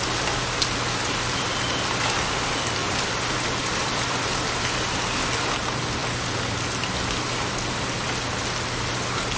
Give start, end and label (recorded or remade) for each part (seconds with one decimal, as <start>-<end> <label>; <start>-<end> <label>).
0.0-2.8 recorded; 2.8-4.3 remade; 4.3-9.4 recorded